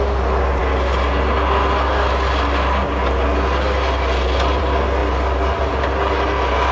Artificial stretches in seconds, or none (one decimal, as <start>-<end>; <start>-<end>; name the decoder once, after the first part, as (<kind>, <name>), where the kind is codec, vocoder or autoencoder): none

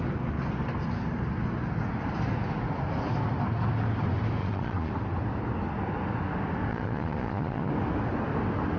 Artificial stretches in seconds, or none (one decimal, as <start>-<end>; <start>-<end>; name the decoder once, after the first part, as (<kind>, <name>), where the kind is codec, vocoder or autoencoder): 4.4-4.9 (vocoder, Vocos); 6.7-7.7

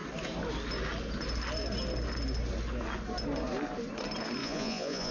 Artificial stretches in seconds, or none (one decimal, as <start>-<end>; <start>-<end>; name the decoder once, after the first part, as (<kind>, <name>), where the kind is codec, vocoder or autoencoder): 4.4-5.1 (vocoder, Vocos)

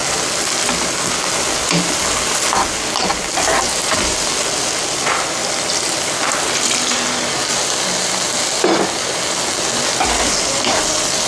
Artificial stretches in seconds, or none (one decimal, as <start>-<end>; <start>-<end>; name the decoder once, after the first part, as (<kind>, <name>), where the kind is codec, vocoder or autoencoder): none

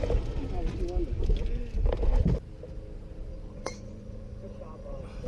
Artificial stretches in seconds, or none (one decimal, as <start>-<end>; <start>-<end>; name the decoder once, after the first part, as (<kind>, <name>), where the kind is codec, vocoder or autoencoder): 3.3-5.3 (vocoder, Vocos)

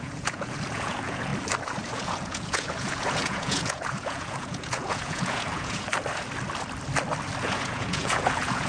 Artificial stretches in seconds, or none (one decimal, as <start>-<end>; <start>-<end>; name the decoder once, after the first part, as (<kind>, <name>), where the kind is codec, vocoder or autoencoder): 0.0-1.3 (vocoder, Vocos); 1.9-5.9; 7.4-8.7